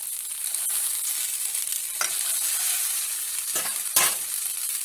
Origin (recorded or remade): remade